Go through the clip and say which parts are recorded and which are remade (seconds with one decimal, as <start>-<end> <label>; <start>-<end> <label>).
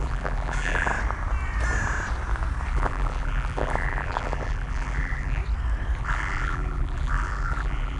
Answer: 0.0-0.9 remade; 0.9-2.7 recorded; 2.7-5.4 remade; 5.4-6.0 recorded; 6.0-8.0 remade